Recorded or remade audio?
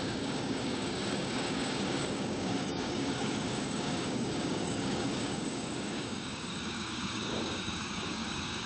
remade